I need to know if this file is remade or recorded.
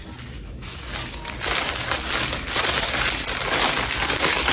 recorded